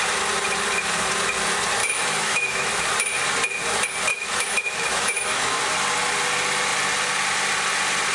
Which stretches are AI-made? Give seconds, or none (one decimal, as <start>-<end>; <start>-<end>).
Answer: 1.8-2.8; 4.1-5.7